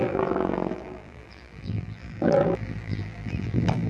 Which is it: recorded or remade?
remade